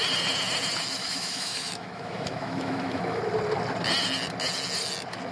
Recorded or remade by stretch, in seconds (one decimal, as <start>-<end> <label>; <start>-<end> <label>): 0.0-1.0 recorded; 1.0-3.2 remade; 3.2-5.3 recorded